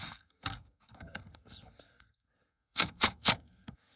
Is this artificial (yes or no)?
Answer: yes